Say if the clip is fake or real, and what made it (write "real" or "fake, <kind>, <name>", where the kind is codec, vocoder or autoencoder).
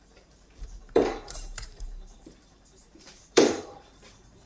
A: fake, vocoder, BigVGAN v2